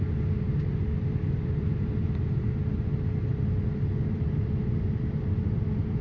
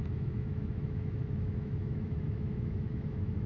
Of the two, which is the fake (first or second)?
second